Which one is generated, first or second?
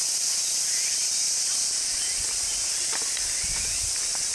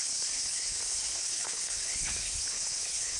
second